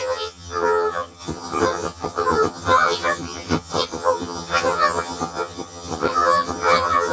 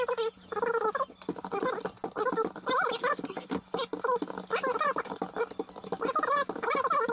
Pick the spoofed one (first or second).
first